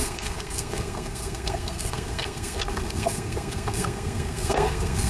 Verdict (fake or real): fake